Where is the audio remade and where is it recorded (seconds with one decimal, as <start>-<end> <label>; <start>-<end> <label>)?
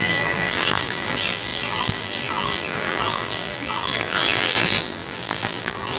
0.0-6.0 remade